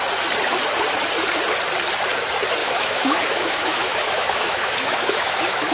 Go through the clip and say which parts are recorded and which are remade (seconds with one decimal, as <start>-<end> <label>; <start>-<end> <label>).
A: 0.0-2.6 recorded; 2.6-5.7 remade